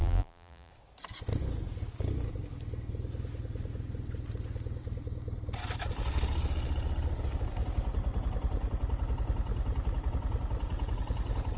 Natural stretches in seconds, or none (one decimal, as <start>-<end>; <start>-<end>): 0.7-11.6